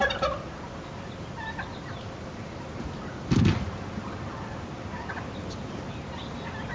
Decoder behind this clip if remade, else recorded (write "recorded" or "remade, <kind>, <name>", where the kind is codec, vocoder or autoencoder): recorded